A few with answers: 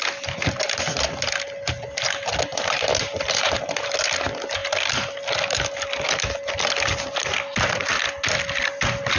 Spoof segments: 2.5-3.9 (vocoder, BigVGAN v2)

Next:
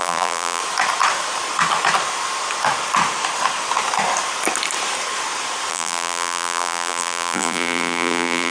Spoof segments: 0.0-0.6 (vocoder, BigVGAN v2); 5.7-8.5

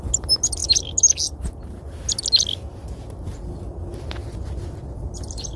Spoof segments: none

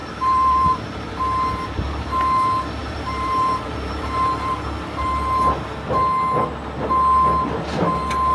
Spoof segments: 0.0-1.2 (vocoder, BigVGAN v2); 2.8-4.5

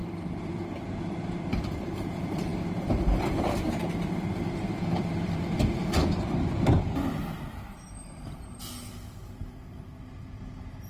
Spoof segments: 1.0-10.9 (vocoder, BigVGAN v2)